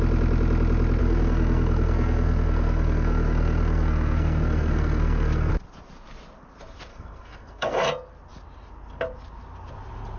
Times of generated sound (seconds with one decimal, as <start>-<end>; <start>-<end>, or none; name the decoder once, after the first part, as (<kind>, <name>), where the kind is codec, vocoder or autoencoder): 1.0-5.5 (codec, SNAC); 6.9-7.8